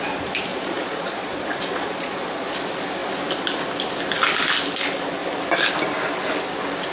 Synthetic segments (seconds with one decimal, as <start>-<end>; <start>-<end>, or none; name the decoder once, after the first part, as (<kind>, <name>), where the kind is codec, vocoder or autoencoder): 0.5-2.6 (vocoder, Vocos)